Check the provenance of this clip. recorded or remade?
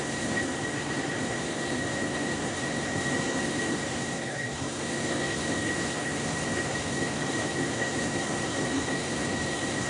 remade